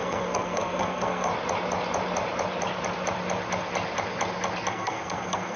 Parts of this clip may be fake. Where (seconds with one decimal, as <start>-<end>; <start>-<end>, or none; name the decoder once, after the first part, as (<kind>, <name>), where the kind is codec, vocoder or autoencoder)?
0.0-1.3 (codec, SNAC); 4.7-5.6